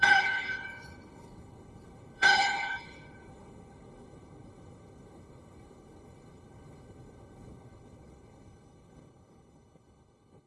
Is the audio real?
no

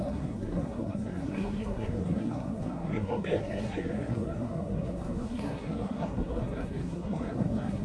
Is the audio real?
no